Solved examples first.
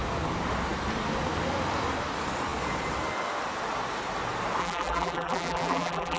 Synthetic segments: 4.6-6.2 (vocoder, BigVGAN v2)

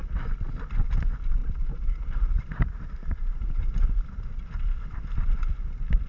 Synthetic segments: 1.4-4.1 (vocoder, BigVGAN v2)

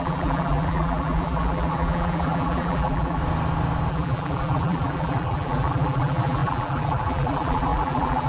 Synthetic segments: 0.0-3.2 (vocoder, BigVGAN v2); 3.9-8.3

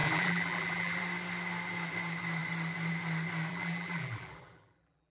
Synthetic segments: 0.0-1.0 (vocoder, BigVGAN v2); 3.5-5.1

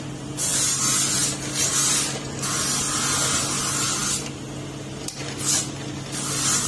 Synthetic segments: none

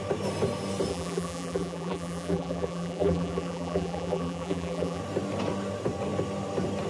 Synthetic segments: 0.9-5.0 (vocoder, BigVGAN v2)

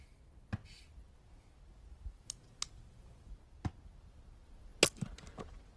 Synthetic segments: none

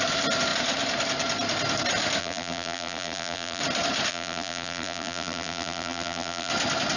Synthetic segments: 2.2-3.6 (vocoder, BigVGAN v2); 4.1-6.5